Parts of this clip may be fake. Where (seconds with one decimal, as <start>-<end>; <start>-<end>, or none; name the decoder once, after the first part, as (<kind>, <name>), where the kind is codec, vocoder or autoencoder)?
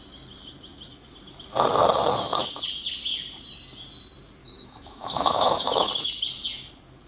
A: 4.4-5.9 (autoencoder, DAC-VAE)